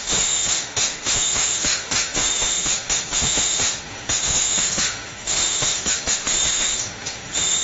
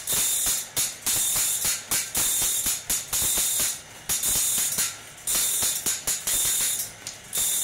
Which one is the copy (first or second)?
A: first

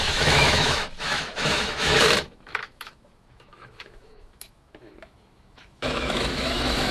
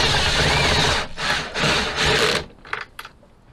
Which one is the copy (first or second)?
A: first